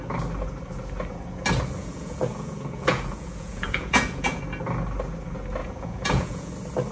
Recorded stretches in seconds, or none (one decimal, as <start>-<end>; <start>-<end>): 0.0-1.8; 4.4-5.6; 6.5-6.9